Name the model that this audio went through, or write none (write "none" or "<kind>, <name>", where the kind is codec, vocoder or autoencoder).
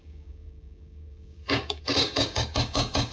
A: codec, DAC